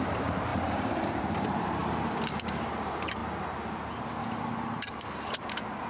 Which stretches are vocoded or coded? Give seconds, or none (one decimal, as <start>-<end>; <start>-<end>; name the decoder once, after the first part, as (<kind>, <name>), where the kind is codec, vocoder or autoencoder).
0.0-1.8 (vocoder, BigVGAN v2); 2.8-3.2; 4.2-5.9